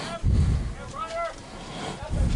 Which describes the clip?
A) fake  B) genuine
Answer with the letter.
B